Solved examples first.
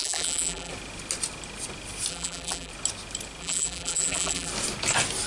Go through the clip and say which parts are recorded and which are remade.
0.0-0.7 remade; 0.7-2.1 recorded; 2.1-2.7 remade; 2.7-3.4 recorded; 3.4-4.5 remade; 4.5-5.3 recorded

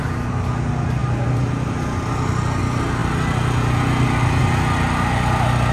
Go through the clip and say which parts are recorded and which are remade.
0.0-5.7 recorded

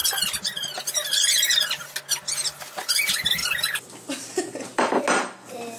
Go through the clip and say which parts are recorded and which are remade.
0.0-3.4 recorded; 3.4-5.0 remade; 5.0-5.8 recorded

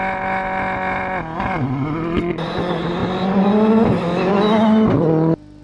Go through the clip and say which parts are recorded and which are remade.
0.0-5.6 recorded

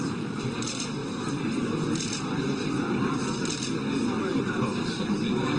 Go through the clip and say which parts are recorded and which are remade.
0.0-5.6 recorded